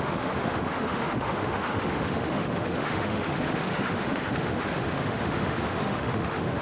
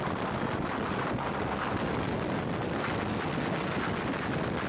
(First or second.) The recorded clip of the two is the second